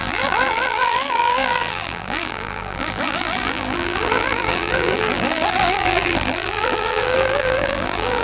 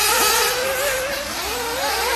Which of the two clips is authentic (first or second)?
second